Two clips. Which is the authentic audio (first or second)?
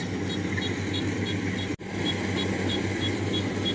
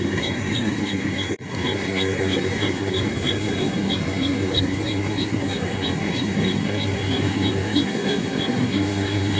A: first